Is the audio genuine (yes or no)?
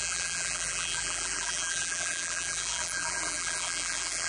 no